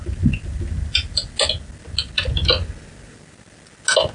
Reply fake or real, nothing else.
real